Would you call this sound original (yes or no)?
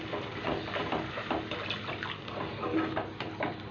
yes